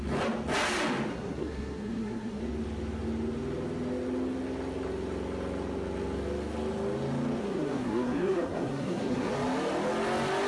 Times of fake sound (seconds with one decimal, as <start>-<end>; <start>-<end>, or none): 1.1-2.4; 7.4-9.3